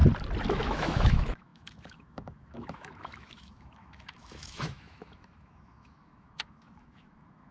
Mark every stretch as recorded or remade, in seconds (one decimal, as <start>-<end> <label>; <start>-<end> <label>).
0.0-0.5 recorded; 0.5-7.5 remade